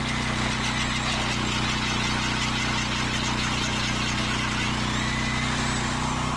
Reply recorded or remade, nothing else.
recorded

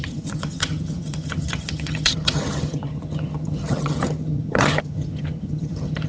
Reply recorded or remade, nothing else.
remade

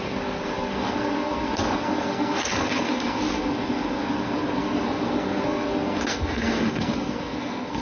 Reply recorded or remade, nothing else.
remade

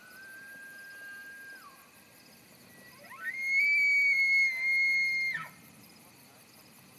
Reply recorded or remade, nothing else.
recorded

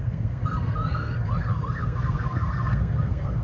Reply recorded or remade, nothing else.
remade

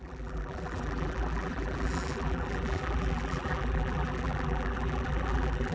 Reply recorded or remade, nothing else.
remade